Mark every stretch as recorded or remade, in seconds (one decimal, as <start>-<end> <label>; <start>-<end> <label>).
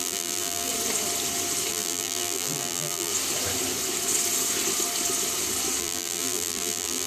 0.0-0.7 remade; 0.7-1.7 recorded; 1.7-3.1 remade; 3.1-5.8 recorded; 5.8-7.1 remade